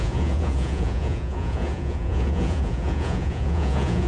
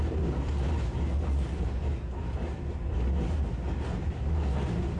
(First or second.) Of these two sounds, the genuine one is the second